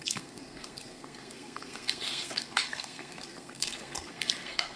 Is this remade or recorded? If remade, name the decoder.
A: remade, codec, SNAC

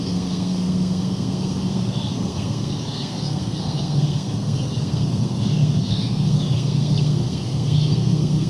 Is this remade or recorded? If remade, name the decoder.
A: remade, codec, SNAC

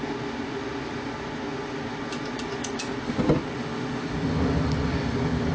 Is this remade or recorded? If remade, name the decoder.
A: recorded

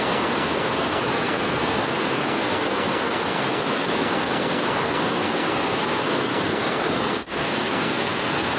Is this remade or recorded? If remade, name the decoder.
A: remade, codec, SNAC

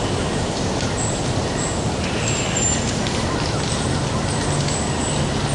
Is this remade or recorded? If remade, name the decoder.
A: recorded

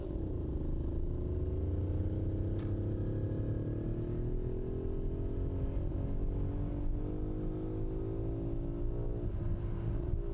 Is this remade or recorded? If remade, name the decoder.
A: recorded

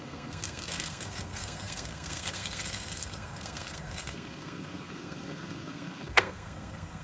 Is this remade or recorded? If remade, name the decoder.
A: remade, codec, SNAC